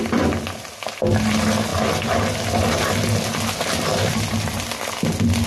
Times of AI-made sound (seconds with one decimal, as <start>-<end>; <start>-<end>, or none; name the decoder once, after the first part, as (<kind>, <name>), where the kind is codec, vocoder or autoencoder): none